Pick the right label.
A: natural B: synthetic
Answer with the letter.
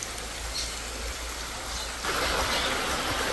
A